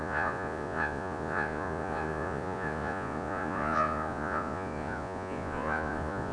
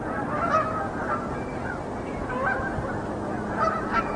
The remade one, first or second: first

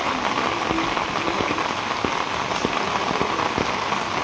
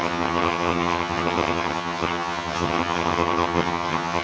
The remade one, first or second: second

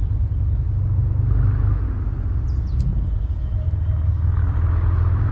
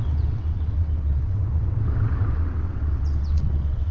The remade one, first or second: second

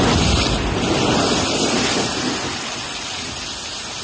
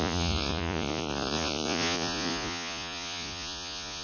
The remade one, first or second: second